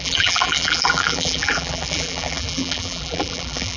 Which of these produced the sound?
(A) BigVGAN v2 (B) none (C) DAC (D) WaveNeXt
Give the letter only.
A